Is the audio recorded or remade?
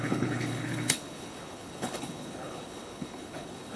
remade